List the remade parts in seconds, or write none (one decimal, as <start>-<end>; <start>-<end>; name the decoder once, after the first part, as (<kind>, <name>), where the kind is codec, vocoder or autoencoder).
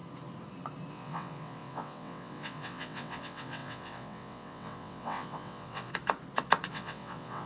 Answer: 0.9-5.9 (vocoder, WaveNeXt); 6.7-7.5